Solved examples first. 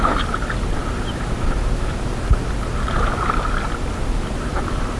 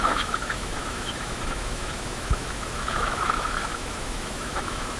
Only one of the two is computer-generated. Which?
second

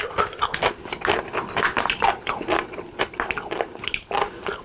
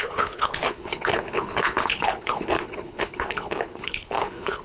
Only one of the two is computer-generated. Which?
second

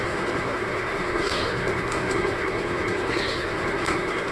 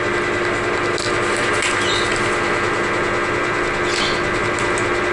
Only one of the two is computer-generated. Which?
first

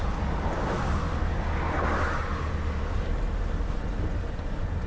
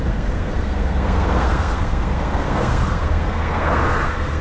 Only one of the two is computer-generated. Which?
second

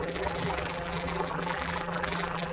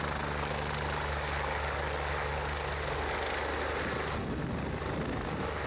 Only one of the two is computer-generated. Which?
first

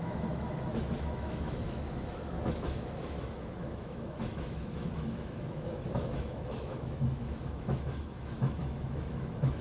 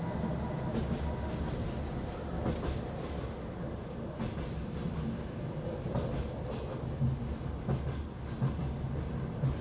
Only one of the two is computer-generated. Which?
first